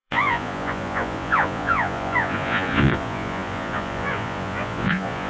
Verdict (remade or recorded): remade